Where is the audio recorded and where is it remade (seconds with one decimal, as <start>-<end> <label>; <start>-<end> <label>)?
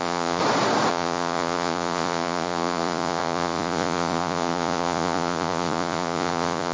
0.0-0.4 remade; 0.4-0.9 recorded; 0.9-6.7 remade